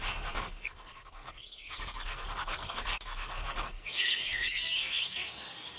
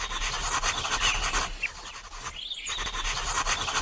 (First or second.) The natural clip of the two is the second